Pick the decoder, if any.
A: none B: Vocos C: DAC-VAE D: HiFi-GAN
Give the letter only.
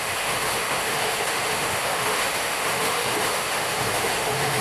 C